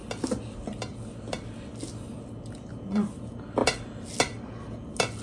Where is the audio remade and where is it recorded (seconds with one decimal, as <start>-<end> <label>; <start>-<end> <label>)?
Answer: 0.0-5.2 recorded